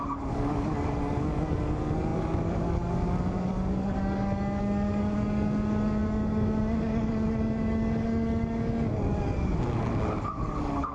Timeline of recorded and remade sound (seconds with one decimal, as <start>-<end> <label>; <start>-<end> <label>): 0.0-10.9 remade